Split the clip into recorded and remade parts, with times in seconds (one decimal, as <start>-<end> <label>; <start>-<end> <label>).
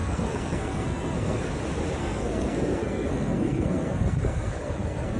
0.0-1.5 remade; 1.5-2.0 recorded; 2.0-5.2 remade